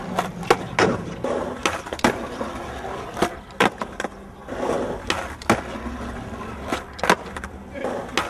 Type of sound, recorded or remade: recorded